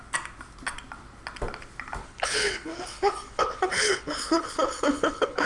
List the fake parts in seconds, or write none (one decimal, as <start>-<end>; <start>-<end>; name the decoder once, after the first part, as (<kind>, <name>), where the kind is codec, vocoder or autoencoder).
2.0-5.5 (codec, HILCodec)